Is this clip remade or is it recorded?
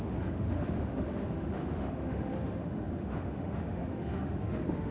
remade